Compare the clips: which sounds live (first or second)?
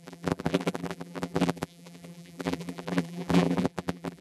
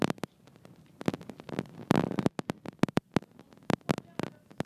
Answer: second